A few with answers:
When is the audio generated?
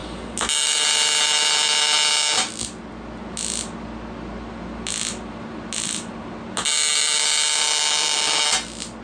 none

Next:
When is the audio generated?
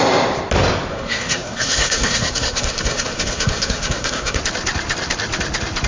0.9-4.4 (codec, SNAC)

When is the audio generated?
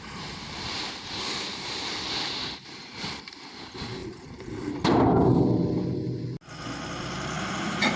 0.0-2.8 (vocoder, BigVGAN v2); 3.6-4.0; 7.4-8.0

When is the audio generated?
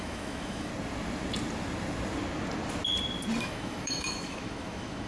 0.0-0.7 (autoencoder, DAC-VAE); 3.4-5.1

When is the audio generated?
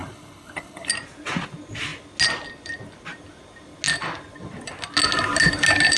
0.0-0.9 (codec, HILCodec)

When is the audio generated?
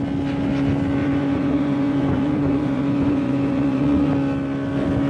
1.0-4.1 (vocoder, Vocos)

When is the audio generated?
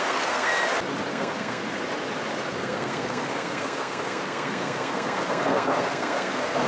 0.0-0.5 (codec, SNAC); 1.1-1.6; 2.5-6.7